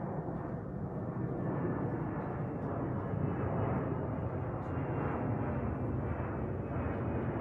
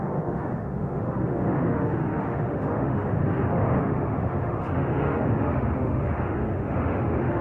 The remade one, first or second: second